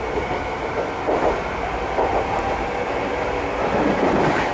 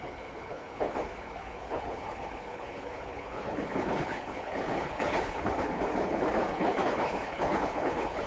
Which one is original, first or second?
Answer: first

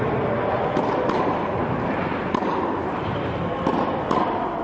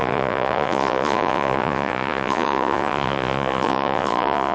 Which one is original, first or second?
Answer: first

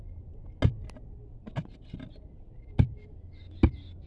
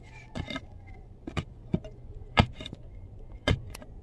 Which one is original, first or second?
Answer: first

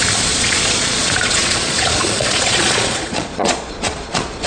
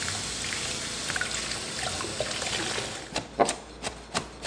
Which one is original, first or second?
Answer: second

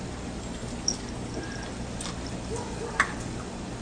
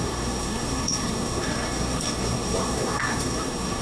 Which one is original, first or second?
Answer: first